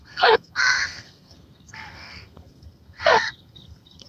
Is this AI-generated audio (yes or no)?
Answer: yes